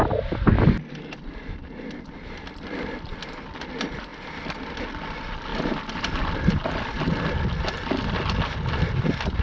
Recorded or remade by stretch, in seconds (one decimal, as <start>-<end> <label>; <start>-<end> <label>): 0.0-5.5 recorded; 5.5-6.3 remade; 6.3-9.4 recorded